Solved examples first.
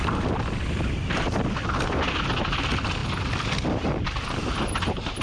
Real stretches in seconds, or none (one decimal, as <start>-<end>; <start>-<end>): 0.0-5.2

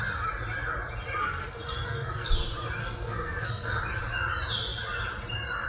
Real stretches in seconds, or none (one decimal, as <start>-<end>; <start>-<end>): 0.0-1.2; 2.3-2.8; 3.8-5.7

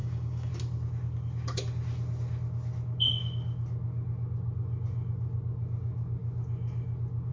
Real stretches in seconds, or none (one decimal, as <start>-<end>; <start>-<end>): 0.5-7.3

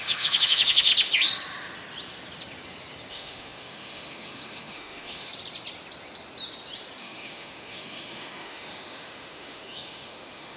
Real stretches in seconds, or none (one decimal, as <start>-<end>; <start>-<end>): 0.9-3.1; 5.3-7.0

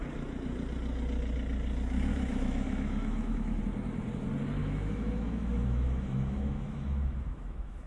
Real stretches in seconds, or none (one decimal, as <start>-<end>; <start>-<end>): 0.0-2.1; 3.6-4.6